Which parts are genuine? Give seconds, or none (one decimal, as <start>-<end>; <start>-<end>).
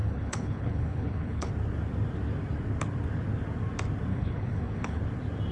1.5-4.1; 5.0-5.5